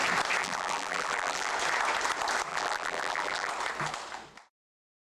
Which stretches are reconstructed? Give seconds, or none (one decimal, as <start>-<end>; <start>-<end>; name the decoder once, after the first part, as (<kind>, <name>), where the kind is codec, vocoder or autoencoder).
0.4-1.5 (vocoder, BigVGAN v2); 2.5-3.5